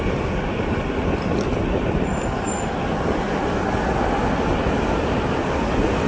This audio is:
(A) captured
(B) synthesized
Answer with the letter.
A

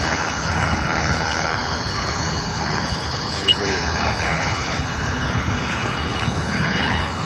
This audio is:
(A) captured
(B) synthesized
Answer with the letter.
B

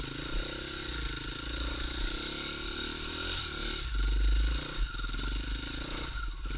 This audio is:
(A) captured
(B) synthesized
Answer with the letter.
A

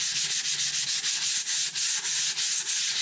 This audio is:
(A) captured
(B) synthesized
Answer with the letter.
A